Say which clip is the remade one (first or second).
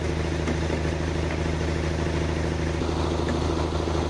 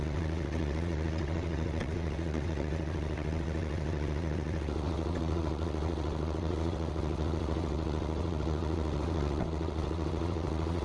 second